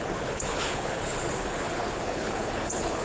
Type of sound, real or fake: fake